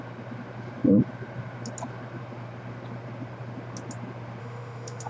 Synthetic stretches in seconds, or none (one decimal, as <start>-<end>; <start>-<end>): 4.4-5.1